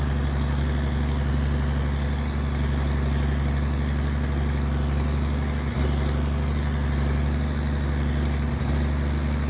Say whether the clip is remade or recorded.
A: recorded